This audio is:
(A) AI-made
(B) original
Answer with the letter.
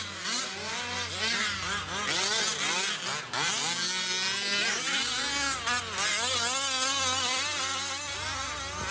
B